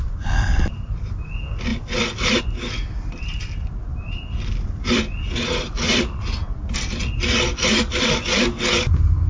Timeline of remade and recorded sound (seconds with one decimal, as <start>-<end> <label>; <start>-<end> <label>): 0.0-9.3 recorded